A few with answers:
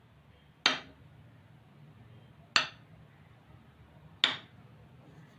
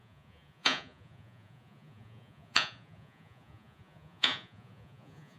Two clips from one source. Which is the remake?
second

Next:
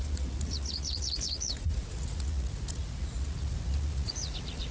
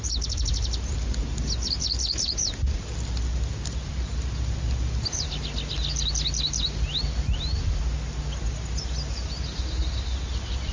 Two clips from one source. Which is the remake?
first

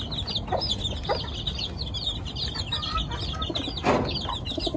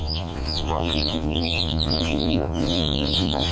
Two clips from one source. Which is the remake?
second